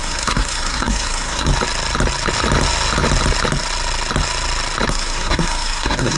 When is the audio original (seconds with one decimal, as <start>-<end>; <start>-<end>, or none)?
1.5-4.9